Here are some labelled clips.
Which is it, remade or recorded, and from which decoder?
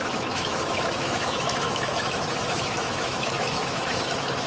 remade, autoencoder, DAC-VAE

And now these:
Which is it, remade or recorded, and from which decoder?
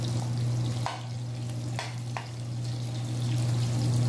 recorded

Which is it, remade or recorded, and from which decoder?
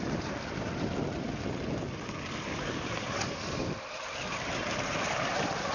recorded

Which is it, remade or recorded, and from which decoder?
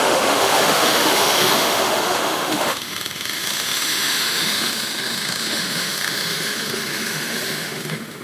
remade, autoencoder, DAC-VAE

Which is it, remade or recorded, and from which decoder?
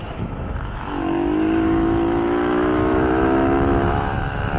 remade, autoencoder, DAC-VAE